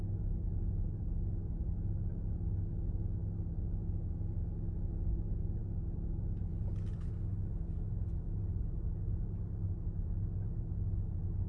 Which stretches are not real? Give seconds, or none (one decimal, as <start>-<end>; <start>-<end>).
none